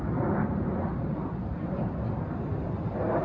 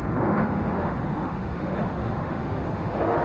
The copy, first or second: second